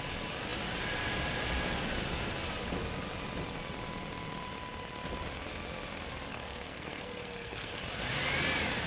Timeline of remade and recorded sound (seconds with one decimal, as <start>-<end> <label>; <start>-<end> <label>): 0.0-6.3 recorded; 6.3-7.8 remade; 7.8-8.9 recorded